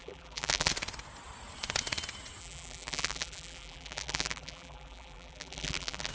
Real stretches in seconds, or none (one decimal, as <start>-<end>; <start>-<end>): 0.7-2.4